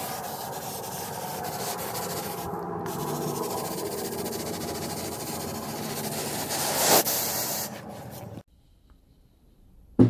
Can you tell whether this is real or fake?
real